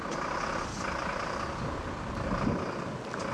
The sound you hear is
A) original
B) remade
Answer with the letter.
A